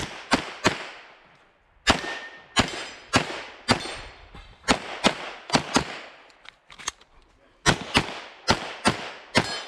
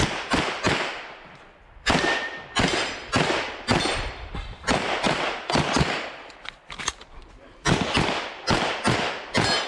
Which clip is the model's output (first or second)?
second